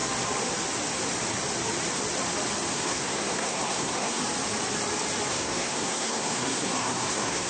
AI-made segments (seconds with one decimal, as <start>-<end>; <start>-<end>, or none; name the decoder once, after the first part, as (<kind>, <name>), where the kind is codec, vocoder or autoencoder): 2.7-4.2 (codec, SNAC); 5.3-7.5